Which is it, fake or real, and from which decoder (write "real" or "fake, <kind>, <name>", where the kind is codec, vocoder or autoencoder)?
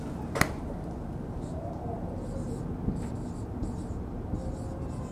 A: real